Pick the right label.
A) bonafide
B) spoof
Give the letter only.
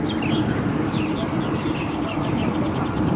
B